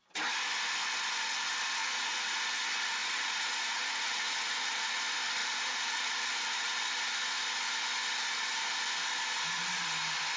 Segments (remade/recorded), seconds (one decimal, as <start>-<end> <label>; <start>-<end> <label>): 0.0-1.8 recorded; 1.8-2.4 remade; 2.4-3.0 recorded; 3.0-5.0 remade; 5.0-5.4 recorded; 5.4-6.3 remade; 6.3-10.4 recorded